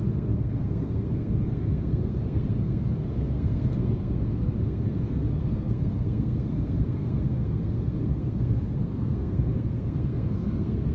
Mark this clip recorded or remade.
remade